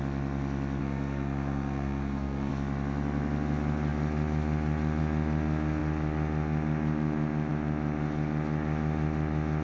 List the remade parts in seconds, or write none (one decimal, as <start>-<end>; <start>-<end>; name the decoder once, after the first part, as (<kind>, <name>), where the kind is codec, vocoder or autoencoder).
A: 0.8-2.5 (codec, SNAC)